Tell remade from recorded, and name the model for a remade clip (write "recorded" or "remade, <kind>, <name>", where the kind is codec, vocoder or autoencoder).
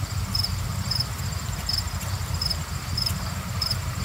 remade, vocoder, BigVGAN v2